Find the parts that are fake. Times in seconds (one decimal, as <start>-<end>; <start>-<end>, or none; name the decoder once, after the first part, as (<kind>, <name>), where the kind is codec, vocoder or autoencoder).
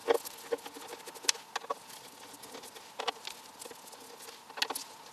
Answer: none